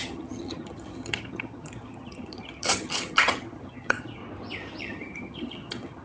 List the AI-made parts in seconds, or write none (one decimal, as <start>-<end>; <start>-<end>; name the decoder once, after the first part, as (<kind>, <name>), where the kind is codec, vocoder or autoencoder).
0.0-4.2 (vocoder, HiFi-GAN); 4.8-6.0